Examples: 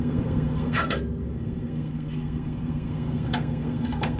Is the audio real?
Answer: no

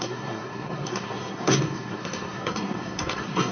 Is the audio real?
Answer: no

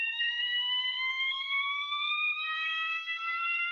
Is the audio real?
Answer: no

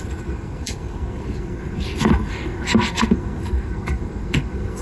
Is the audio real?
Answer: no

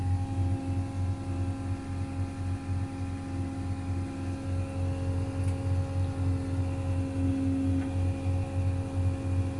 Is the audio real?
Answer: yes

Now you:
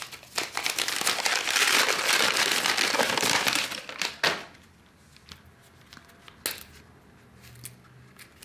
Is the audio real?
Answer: yes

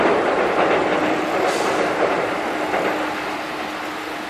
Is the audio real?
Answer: yes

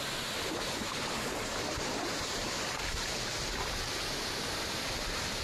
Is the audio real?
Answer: yes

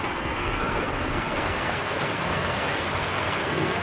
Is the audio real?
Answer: no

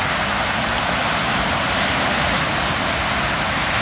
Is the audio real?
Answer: yes